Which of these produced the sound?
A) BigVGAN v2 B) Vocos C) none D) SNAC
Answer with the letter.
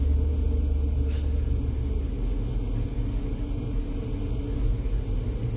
C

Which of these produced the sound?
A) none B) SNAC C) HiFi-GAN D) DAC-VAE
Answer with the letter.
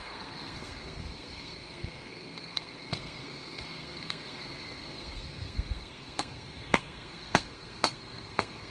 B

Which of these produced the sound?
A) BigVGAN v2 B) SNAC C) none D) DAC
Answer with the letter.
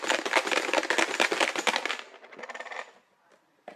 C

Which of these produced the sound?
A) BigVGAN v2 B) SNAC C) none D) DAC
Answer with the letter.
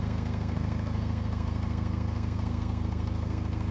B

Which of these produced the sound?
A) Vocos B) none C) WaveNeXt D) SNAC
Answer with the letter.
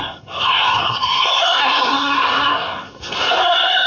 D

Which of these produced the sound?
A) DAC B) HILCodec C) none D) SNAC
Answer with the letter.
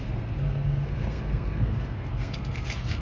D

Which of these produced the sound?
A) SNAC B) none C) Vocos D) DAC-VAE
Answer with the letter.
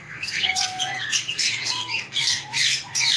A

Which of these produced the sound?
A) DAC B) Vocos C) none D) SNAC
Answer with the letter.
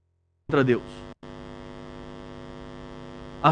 C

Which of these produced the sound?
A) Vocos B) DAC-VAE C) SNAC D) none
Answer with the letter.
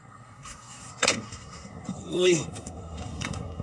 C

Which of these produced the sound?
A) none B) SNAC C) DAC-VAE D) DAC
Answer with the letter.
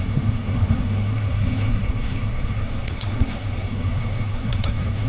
B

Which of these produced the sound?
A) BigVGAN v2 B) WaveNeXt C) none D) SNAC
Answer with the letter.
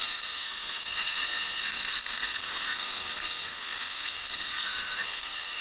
D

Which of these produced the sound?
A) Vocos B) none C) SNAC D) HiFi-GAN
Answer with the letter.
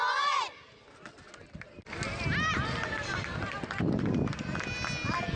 B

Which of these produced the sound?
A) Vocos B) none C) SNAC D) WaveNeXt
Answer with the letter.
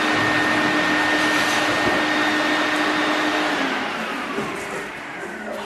B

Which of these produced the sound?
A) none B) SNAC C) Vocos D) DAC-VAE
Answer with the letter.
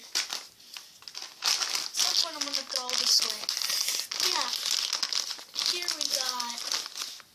A